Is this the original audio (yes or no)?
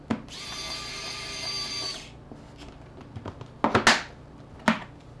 yes